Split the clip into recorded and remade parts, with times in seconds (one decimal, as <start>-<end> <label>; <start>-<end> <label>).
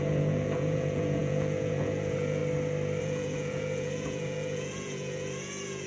0.0-2.4 remade; 2.4-3.0 recorded; 3.0-5.9 remade